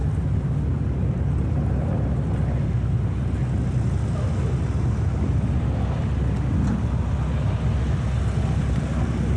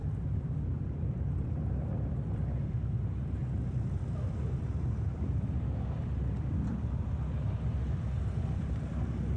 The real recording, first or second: first